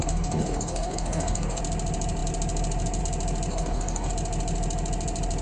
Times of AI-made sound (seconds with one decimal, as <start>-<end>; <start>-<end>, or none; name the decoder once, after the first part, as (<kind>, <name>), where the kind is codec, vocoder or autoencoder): 0.0-1.6 (codec, DAC); 3.5-4.1